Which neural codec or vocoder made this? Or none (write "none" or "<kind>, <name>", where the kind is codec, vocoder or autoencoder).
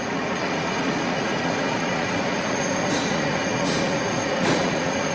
vocoder, Vocos